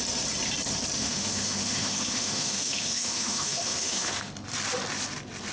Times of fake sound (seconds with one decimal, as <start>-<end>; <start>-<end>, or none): 1.0-4.3